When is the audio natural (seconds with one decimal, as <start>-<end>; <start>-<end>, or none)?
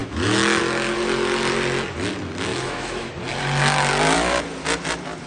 0.6-2.5; 3.1-5.3